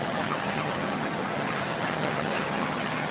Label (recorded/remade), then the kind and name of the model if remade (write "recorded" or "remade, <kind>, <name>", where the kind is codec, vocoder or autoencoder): remade, vocoder, HiFi-GAN